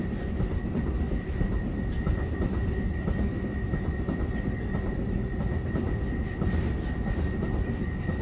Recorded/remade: recorded